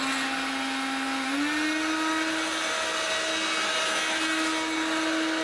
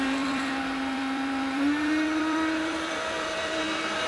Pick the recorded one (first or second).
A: first